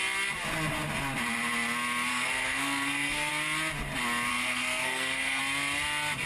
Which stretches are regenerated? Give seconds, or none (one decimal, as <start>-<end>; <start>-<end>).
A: 2.1-3.3; 4.3-5.4

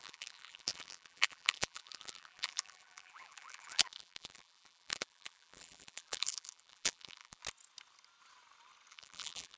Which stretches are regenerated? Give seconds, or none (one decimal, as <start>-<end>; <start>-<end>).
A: 0.0-7.4; 8.9-9.6

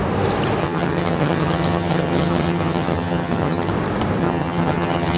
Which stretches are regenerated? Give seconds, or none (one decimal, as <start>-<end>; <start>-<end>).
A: 0.6-3.7; 4.2-5.2